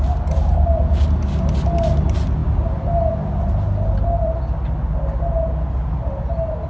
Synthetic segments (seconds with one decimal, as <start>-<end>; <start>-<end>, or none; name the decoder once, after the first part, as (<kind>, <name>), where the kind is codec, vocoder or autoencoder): none